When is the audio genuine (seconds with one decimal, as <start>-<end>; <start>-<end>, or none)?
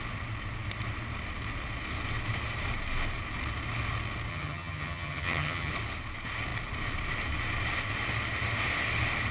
0.0-4.3; 5.7-9.3